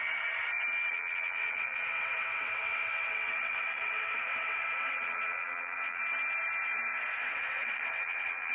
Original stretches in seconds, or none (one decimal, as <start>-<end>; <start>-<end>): 0.0-0.9; 6.0-7.2